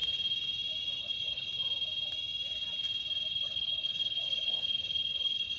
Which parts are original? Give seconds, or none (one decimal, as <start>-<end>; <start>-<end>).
0.0-1.0; 1.5-3.3